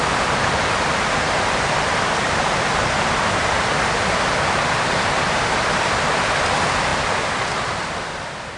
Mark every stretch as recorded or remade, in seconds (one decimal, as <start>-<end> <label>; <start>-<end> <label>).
0.0-8.6 remade